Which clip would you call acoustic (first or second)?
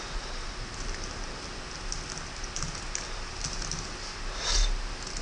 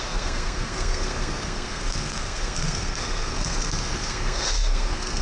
first